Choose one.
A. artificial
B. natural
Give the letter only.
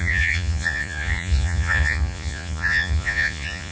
A